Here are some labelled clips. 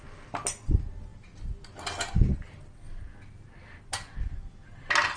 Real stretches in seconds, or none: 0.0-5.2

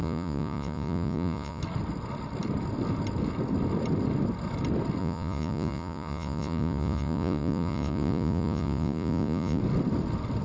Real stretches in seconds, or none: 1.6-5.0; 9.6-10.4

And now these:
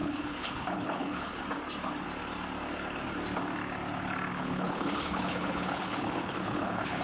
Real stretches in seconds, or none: 1.4-4.3